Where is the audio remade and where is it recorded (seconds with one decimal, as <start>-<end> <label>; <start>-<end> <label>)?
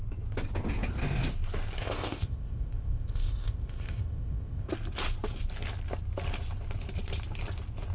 0.0-1.8 recorded; 1.8-4.7 remade; 4.7-7.9 recorded